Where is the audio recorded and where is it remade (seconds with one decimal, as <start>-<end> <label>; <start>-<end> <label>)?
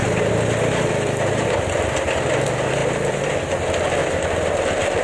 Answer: 0.0-5.0 recorded